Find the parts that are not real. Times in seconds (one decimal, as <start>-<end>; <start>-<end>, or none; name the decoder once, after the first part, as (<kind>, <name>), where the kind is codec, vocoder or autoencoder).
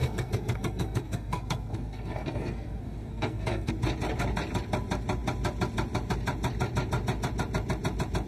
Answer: 0.0-3.7 (codec, SNAC)